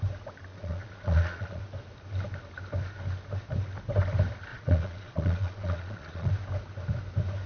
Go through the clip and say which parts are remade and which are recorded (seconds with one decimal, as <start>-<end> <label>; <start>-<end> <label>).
0.0-0.5 recorded; 0.5-1.6 remade; 1.6-4.5 recorded; 4.5-6.3 remade; 6.3-7.5 recorded